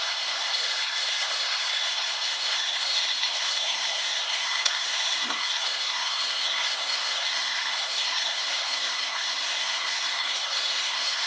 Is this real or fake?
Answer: fake